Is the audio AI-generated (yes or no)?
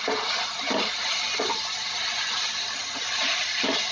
no